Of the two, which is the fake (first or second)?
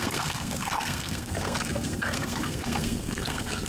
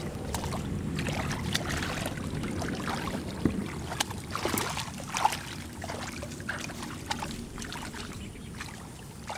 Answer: first